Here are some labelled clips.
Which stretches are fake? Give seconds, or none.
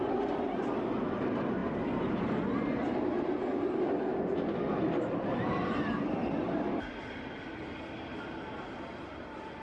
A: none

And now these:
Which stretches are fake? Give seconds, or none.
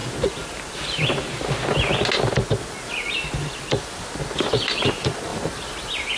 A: 3.7-6.2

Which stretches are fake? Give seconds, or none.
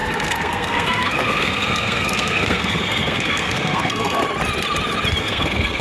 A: 0.0-4.2; 5.2-5.8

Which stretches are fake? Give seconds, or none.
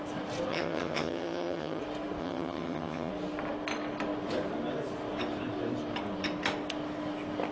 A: 0.5-1.8; 2.2-3.1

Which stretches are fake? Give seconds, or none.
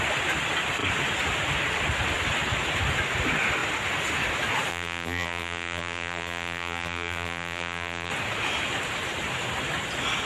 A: 4.7-8.1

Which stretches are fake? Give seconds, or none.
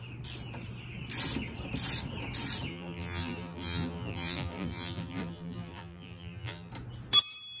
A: 2.7-6.7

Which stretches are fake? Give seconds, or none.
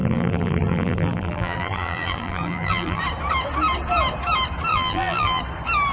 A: 0.0-3.0; 4.7-5.4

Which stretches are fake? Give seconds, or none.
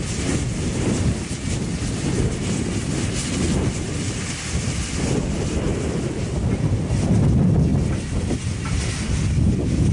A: none